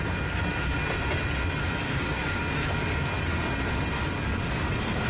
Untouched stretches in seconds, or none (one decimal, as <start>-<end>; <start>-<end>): 0.0-1.8; 2.4-5.1